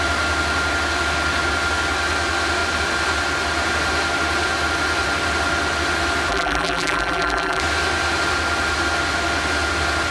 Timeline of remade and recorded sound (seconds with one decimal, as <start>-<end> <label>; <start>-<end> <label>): 0.0-6.3 recorded; 6.3-7.6 remade; 7.6-10.1 recorded